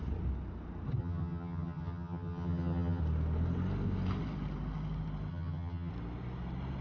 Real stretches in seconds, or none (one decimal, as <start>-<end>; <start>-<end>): 0.0-1.0; 3.0-5.3; 5.9-6.8